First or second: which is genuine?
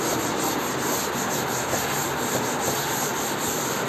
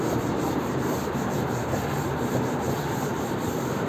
first